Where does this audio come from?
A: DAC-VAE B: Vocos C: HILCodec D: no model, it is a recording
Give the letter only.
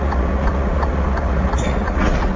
B